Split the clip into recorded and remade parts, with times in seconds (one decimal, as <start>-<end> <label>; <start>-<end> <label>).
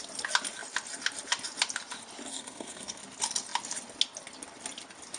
0.0-2.3 recorded; 2.3-3.0 remade; 3.0-5.2 recorded